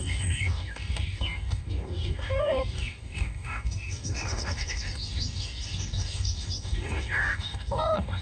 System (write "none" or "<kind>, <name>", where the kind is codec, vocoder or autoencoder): codec, DAC